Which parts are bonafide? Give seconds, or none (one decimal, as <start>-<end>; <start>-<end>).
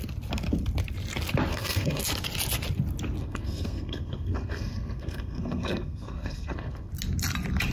0.0-1.5; 2.0-3.2; 6.9-7.7